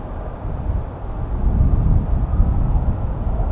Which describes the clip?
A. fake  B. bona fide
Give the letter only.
B